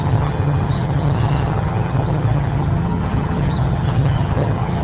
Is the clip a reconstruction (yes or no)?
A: yes